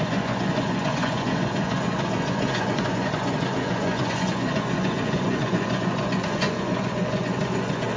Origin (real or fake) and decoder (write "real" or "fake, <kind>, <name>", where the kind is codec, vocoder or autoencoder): fake, vocoder, Vocos